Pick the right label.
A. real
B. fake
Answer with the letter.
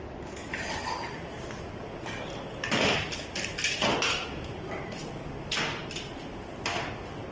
A